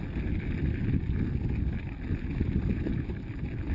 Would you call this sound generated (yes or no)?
no